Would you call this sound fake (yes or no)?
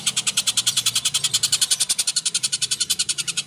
yes